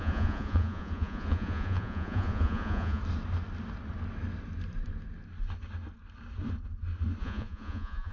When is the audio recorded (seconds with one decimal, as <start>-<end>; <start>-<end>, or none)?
3.0-7.2